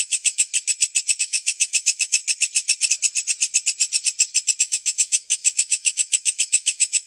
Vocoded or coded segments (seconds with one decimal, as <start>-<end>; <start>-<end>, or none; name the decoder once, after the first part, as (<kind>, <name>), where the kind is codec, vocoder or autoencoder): 0.0-0.5 (autoencoder, DAC-VAE); 1.2-2.2; 4.6-7.1